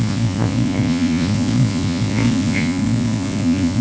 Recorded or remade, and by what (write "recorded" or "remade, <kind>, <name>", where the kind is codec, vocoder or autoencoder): remade, vocoder, Vocos